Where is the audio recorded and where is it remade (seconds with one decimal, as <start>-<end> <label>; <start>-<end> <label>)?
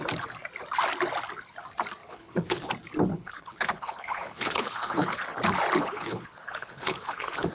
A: 0.0-2.0 recorded; 2.0-2.7 remade; 2.7-3.1 recorded; 3.1-5.2 remade; 5.2-5.8 recorded; 5.8-7.5 remade